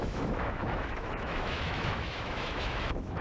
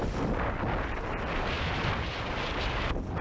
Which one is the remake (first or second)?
first